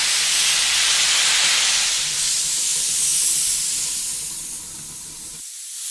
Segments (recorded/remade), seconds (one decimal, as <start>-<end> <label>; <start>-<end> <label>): 0.0-1.4 recorded; 1.4-5.9 remade